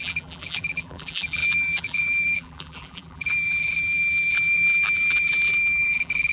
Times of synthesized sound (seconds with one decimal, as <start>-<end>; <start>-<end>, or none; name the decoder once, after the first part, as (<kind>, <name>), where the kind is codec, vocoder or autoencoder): 0.0-6.3 (vocoder, BigVGAN v2)